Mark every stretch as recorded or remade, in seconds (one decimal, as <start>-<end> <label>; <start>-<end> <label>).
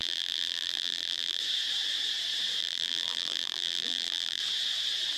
0.0-1.4 remade; 1.4-2.6 recorded; 2.6-4.4 remade; 4.4-5.2 recorded